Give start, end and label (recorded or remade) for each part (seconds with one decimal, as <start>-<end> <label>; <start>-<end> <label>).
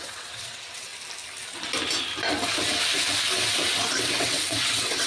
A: 0.0-0.9 remade; 0.9-4.0 recorded; 4.0-5.1 remade